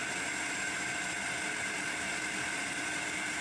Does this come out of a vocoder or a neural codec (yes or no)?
no